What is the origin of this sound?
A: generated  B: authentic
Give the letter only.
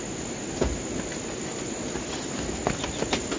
B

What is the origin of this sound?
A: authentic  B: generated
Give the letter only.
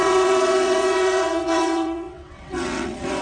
B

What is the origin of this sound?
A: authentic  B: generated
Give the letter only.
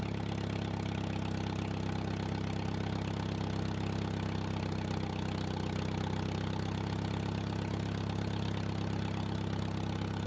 A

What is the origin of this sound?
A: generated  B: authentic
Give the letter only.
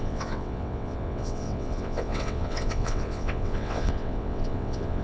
A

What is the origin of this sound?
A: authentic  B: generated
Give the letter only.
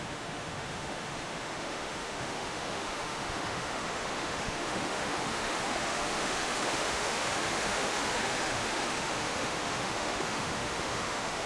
B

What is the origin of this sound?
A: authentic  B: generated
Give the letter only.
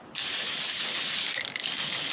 A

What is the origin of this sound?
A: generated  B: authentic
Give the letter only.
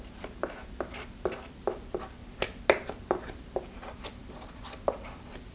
B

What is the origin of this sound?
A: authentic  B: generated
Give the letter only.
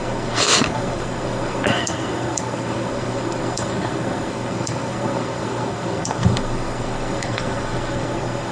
B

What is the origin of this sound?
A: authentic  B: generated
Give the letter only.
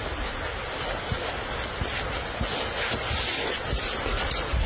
A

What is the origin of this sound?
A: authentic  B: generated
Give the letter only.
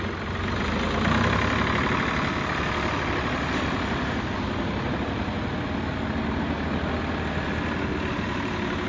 A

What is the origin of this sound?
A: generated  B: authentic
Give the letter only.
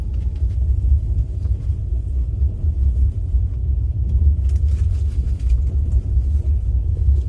A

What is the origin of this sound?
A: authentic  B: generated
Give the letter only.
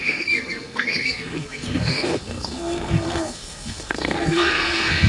B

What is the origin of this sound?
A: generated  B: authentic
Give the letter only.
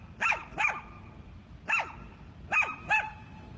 B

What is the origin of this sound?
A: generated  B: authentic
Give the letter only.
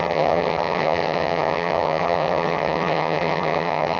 A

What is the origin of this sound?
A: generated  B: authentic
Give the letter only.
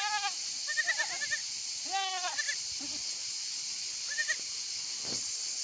B